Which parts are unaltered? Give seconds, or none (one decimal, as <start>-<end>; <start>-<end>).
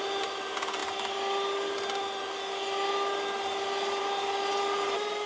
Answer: 0.0-5.3